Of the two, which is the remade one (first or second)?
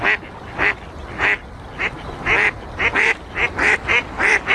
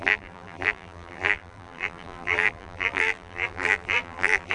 second